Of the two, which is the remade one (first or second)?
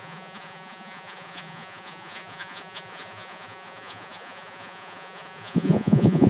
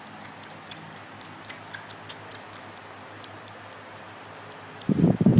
first